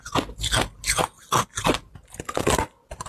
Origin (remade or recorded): recorded